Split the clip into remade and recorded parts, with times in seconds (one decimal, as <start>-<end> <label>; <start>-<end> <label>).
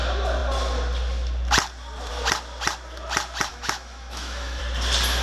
0.0-3.5 recorded; 3.5-4.6 remade; 4.6-5.2 recorded